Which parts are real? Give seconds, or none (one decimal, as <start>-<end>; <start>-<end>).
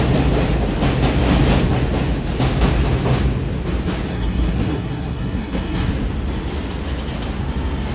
0.0-4.1; 5.9-7.9